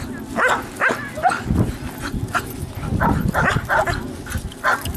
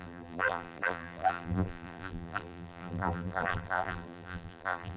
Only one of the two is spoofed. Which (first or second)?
second